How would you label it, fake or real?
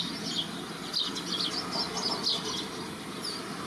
real